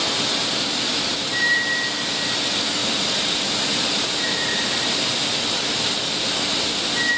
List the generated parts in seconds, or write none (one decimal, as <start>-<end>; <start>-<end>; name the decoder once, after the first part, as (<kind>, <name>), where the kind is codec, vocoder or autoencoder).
0.4-1.6 (vocoder, BigVGAN v2); 2.8-5.0